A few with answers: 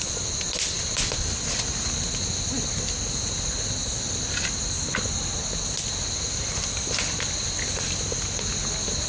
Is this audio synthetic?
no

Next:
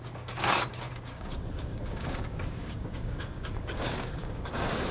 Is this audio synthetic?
yes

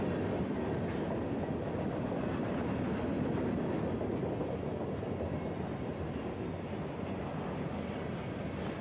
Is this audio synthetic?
no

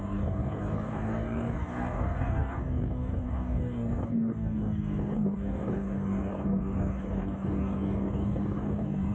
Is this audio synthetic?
yes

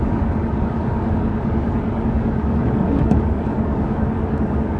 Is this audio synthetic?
yes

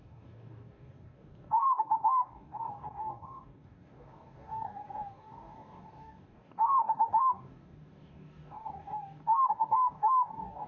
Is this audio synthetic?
yes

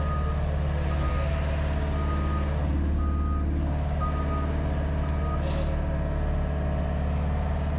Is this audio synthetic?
no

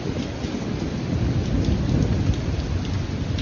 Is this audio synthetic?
no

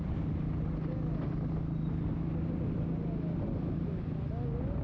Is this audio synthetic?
no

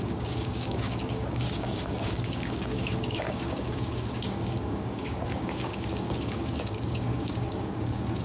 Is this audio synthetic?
yes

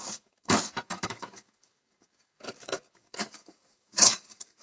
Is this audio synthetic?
yes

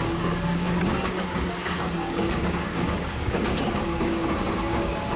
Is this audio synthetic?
yes